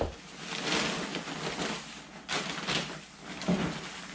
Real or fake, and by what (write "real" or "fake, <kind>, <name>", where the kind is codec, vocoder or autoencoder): real